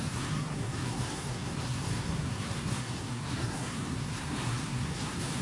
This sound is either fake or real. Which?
fake